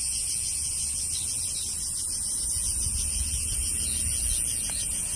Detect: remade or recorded recorded